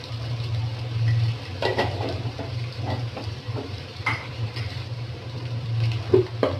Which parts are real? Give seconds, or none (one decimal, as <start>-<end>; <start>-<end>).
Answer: 0.0-1.7; 5.7-6.6